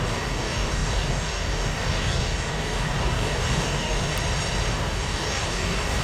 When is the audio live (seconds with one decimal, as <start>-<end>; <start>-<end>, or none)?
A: 4.1-4.7